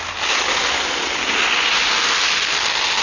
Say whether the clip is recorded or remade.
recorded